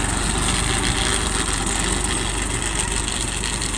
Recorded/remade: recorded